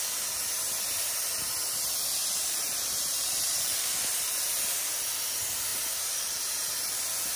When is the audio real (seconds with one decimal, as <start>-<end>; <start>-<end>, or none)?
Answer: 0.0-2.2; 3.9-7.4

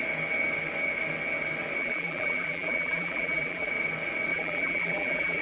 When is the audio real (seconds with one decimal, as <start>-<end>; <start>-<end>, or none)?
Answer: 0.0-1.8; 3.7-4.3

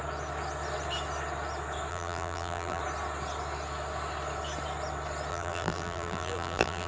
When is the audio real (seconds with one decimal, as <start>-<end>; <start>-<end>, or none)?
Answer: 0.0-1.9; 2.8-5.3

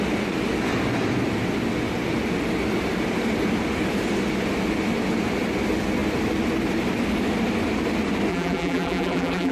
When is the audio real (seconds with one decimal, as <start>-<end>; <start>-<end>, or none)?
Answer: 0.0-8.3

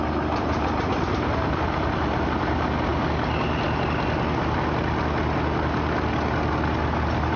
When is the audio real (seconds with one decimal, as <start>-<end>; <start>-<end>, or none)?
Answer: 2.9-7.4

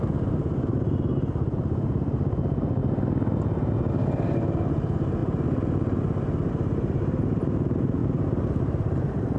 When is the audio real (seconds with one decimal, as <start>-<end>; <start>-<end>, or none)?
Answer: 2.8-3.9; 5.2-6.5

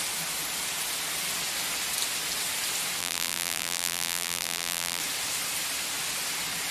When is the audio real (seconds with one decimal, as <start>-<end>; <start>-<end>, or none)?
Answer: 0.0-3.0; 5.0-6.7

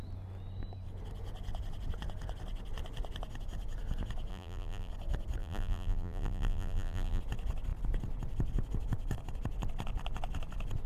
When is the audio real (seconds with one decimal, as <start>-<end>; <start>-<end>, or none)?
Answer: 0.0-4.3; 4.9-5.4; 7.2-10.9